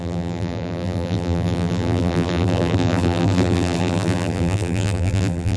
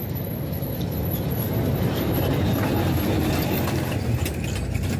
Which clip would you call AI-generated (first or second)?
first